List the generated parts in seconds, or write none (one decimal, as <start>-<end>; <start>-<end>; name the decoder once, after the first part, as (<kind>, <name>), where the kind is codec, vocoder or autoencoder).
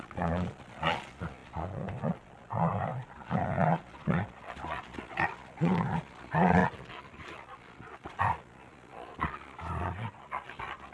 0.0-10.9 (vocoder, Vocos)